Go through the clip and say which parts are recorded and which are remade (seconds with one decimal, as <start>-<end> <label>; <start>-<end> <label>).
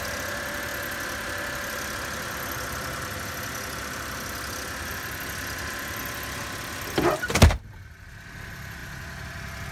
0.0-9.7 recorded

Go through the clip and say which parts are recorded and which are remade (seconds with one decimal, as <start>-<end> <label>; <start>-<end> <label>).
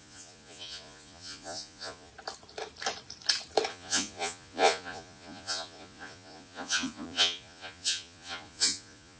0.0-2.1 remade; 2.1-3.7 recorded; 3.7-9.2 remade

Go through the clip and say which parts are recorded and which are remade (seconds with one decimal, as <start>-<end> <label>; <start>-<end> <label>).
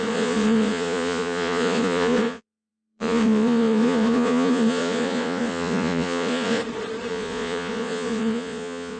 0.0-6.6 remade; 6.6-7.1 recorded; 7.1-9.0 remade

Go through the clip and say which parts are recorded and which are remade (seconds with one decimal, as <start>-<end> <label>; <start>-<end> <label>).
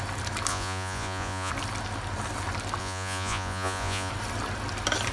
0.0-0.5 recorded; 0.5-1.5 remade; 1.5-2.8 recorded; 2.8-4.1 remade; 4.1-5.1 recorded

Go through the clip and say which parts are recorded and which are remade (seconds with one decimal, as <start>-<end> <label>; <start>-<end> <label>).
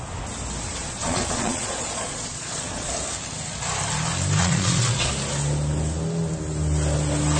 0.0-0.8 recorded; 0.8-2.9 remade; 2.9-4.4 recorded; 4.4-5.1 remade; 5.1-7.4 recorded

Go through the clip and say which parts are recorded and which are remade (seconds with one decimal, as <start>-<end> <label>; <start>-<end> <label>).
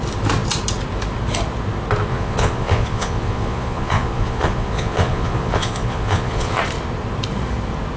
0.0-2.1 recorded; 2.1-6.6 remade; 6.6-8.0 recorded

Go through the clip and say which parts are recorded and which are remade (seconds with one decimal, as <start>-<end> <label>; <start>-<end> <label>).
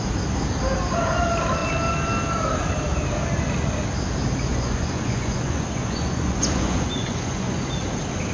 0.0-4.5 recorded; 4.5-7.7 remade; 7.7-8.3 recorded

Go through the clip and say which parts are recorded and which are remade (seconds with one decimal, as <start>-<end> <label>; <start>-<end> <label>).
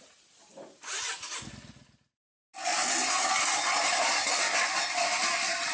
0.0-5.7 recorded